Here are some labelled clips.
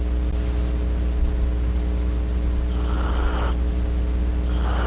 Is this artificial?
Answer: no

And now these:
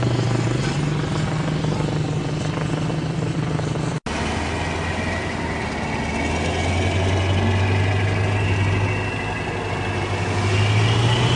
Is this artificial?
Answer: no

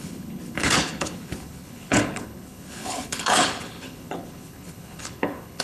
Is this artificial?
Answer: yes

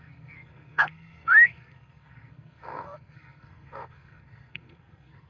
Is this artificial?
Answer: yes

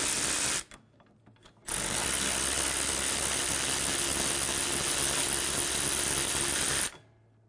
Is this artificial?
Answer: no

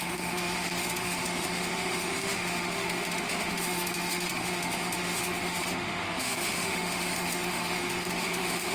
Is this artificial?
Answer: yes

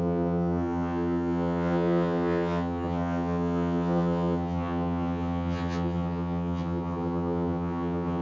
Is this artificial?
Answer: yes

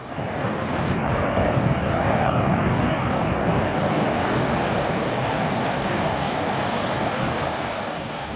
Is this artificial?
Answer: yes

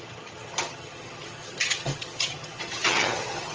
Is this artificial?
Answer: yes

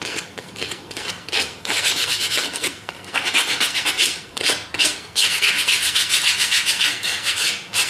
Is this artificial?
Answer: yes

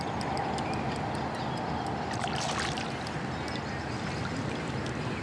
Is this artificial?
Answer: no